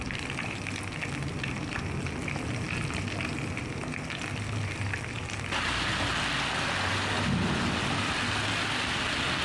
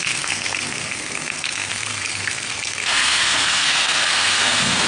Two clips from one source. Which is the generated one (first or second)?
second